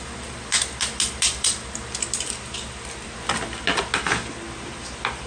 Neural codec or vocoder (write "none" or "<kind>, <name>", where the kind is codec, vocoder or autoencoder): none